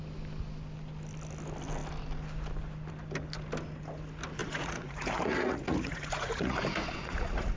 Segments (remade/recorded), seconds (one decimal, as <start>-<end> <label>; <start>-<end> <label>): 0.0-4.4 recorded; 4.4-7.6 remade